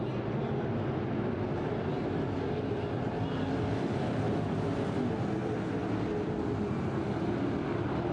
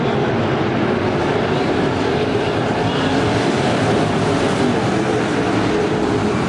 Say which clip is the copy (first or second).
second